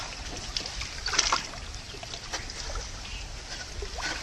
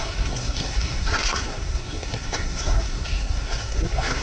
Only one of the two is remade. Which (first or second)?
second